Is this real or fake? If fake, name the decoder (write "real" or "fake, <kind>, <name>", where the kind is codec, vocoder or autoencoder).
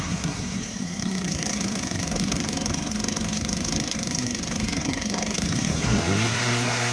fake, codec, SNAC